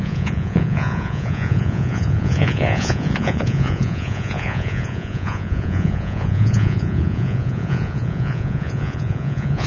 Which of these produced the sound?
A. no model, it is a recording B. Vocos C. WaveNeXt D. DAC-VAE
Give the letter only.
B